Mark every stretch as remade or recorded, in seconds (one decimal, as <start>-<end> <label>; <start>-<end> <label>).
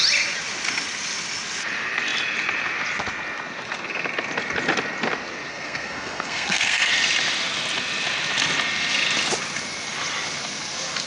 0.0-5.5 recorded; 5.5-6.9 remade; 6.9-11.1 recorded